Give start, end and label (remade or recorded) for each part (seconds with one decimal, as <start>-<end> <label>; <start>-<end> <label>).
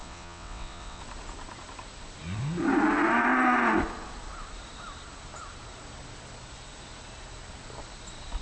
0.0-1.0 remade; 1.0-8.4 recorded